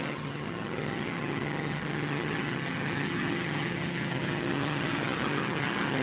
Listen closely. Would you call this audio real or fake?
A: fake